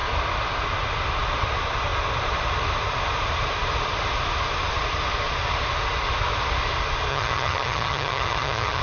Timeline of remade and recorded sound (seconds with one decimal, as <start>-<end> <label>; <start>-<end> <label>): 0.0-7.1 recorded; 7.1-8.8 remade